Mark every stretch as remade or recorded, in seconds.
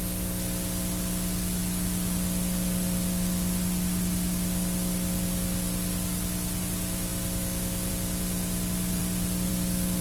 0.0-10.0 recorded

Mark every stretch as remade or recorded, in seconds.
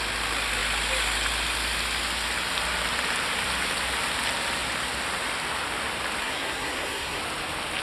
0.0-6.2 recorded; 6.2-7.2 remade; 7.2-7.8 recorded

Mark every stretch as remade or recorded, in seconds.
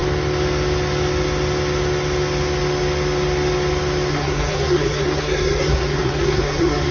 0.0-4.1 recorded; 4.1-6.9 remade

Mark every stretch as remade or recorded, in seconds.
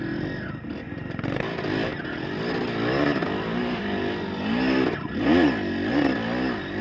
0.0-6.8 recorded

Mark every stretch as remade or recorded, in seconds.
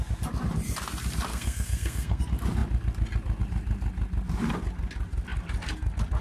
0.0-1.3 recorded; 1.3-2.2 remade; 2.2-6.2 recorded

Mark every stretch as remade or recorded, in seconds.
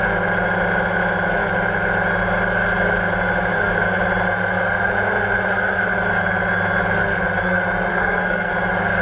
0.0-7.9 recorded; 7.9-8.5 remade; 8.5-9.0 recorded